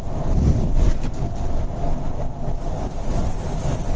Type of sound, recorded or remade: recorded